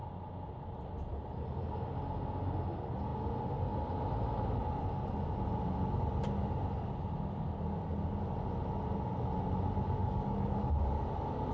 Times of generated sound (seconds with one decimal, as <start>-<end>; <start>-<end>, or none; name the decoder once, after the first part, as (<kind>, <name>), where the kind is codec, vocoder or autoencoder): 10.0-11.0 (codec, DAC)